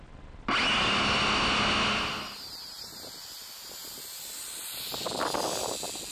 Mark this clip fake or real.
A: real